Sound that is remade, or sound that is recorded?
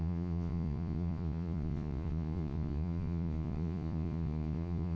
remade